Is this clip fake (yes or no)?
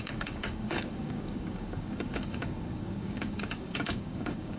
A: yes